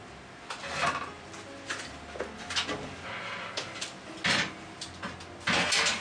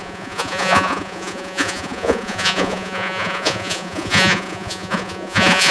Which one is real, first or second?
first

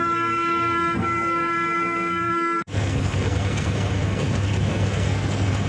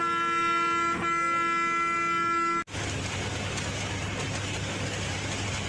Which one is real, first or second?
second